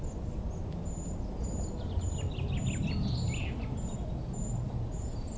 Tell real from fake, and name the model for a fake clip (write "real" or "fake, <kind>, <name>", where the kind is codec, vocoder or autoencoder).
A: real